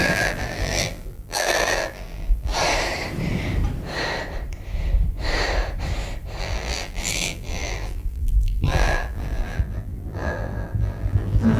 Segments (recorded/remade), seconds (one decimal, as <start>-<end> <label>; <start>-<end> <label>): 0.0-2.5 remade; 2.5-6.4 recorded; 6.4-11.6 remade